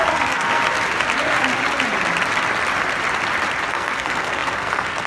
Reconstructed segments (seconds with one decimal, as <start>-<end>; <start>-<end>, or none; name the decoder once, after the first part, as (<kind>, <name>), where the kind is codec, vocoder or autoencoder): 0.0-0.6 (codec, SNAC); 3.7-5.1